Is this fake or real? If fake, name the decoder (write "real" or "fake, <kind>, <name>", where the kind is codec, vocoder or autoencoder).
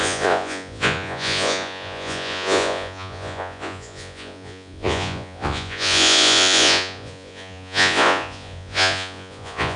fake, vocoder, Vocos